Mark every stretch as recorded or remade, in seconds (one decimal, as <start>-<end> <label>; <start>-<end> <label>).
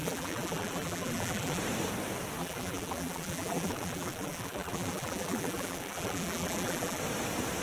0.0-1.6 remade; 1.6-2.4 recorded; 2.4-7.0 remade; 7.0-7.6 recorded